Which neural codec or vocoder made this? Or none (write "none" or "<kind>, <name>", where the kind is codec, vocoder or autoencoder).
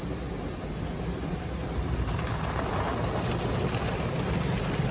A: none